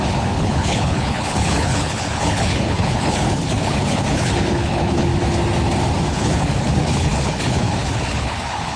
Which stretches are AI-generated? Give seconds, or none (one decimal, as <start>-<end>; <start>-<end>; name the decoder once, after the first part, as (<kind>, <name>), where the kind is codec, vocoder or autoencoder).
0.0-5.1 (codec, HILCodec); 6.1-8.8